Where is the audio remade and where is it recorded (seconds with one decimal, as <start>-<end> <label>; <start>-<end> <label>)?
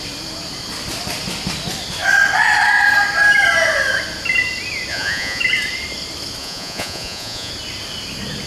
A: 0.0-4.9 recorded; 4.9-5.4 remade; 5.4-6.4 recorded; 6.4-7.5 remade; 7.5-8.5 recorded